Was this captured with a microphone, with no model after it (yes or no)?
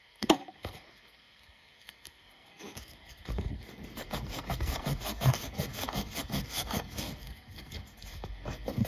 no